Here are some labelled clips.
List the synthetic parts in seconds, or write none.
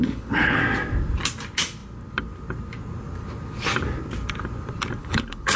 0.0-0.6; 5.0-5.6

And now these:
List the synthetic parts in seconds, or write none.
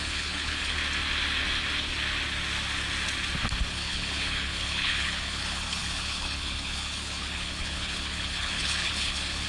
0.0-0.8; 3.7-9.5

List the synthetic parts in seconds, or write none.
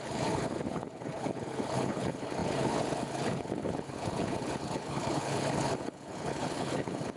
0.0-7.2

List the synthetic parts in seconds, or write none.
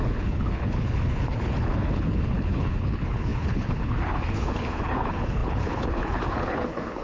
0.0-7.0